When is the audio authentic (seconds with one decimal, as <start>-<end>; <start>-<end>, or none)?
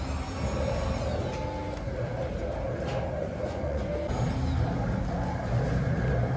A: 0.0-3.2; 3.9-6.4